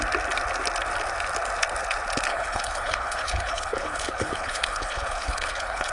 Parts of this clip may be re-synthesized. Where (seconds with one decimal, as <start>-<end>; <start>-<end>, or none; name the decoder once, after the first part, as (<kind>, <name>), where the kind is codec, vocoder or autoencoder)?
2.3-5.9 (codec, HILCodec)